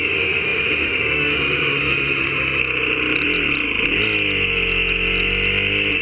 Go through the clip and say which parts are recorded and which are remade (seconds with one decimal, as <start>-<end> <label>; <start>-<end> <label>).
0.0-2.6 remade; 2.6-6.0 recorded

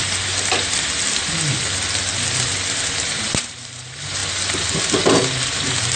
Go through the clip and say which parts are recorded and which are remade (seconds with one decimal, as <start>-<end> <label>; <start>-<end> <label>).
0.0-6.0 recorded